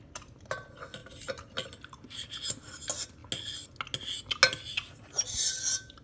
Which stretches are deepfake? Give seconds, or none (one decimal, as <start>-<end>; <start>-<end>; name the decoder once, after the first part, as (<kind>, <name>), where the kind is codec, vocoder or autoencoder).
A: none